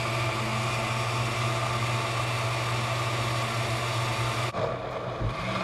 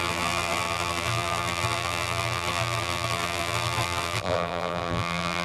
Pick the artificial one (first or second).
second